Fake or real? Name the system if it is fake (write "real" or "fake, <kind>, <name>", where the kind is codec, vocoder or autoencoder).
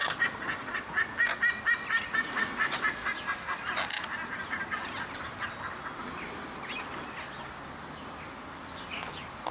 real